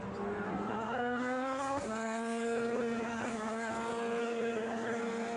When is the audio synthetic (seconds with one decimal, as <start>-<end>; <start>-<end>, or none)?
0.5-3.7; 4.2-5.0